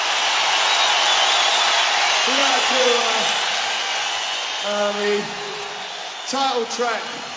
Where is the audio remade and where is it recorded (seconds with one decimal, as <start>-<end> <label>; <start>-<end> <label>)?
0.0-2.4 recorded; 2.4-3.0 remade; 3.0-3.8 recorded; 3.8-6.2 remade; 6.2-7.4 recorded